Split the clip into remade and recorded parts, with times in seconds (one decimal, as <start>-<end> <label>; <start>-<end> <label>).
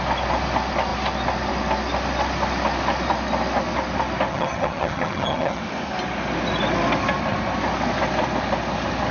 0.0-4.3 recorded; 4.3-5.6 remade; 5.6-9.1 recorded